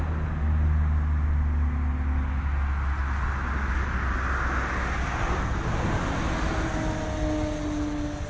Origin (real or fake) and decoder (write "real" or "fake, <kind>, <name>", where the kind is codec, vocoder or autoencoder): real